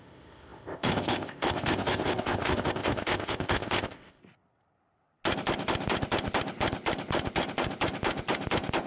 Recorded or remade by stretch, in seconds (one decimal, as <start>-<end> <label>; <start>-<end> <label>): 0.0-4.2 remade; 4.2-8.9 recorded